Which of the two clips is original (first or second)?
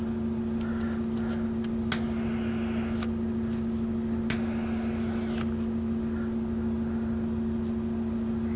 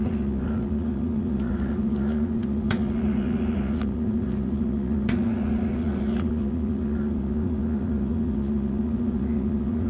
first